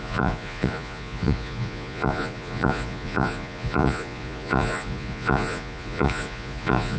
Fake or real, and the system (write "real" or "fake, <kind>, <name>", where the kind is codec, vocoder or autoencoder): fake, vocoder, Vocos